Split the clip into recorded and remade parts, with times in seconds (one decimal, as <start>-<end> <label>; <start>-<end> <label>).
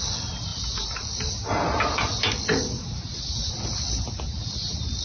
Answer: 0.0-5.0 recorded